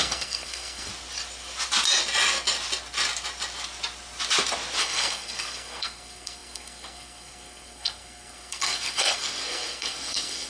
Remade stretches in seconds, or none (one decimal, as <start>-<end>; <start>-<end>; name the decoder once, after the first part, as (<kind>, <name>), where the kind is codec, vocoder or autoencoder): 0.0-0.9 (codec, SNAC); 4.8-10.5